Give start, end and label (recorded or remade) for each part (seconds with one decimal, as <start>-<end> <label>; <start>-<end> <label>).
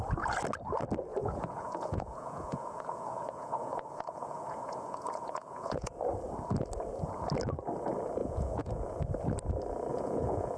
0.0-1.1 recorded; 1.1-5.9 remade; 5.9-8.2 recorded; 8.2-8.9 remade; 8.9-9.9 recorded; 9.9-10.6 remade